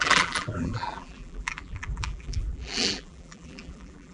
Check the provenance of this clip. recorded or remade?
remade